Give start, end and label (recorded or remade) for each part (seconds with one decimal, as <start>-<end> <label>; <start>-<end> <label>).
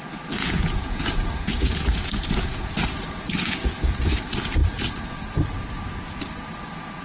0.0-0.4 recorded; 0.4-4.0 remade; 4.0-7.0 recorded